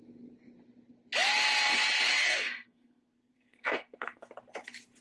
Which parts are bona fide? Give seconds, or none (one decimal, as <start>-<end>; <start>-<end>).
0.0-2.1; 4.3-5.0